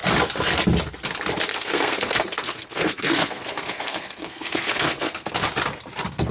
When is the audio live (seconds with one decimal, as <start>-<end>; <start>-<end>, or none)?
0.0-1.5; 5.3-6.3

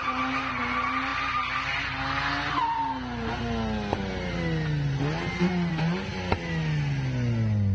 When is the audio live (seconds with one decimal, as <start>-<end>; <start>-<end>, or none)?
0.0-7.7